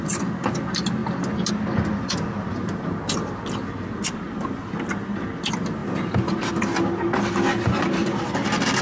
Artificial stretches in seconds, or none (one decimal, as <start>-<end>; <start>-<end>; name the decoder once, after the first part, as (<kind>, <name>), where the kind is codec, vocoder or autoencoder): none